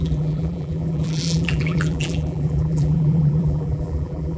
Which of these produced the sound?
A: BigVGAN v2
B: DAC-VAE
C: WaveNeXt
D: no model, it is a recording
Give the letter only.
A